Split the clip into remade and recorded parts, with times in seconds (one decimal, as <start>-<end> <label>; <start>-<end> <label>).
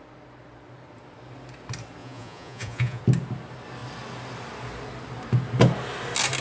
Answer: 0.0-2.0 recorded; 2.0-3.0 remade; 3.0-6.4 recorded